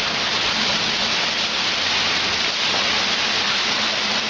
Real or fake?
real